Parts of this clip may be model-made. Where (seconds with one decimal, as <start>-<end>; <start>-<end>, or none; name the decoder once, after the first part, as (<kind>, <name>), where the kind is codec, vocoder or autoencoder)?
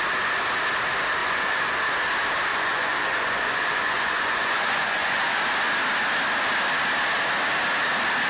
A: 1.2-1.8 (vocoder, Vocos); 2.5-5.4